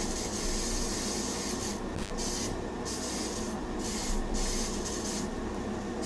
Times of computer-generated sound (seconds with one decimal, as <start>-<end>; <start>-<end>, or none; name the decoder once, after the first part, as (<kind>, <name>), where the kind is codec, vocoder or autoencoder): none